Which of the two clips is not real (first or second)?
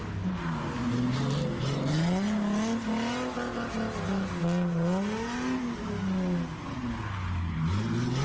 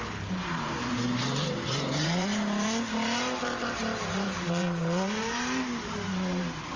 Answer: second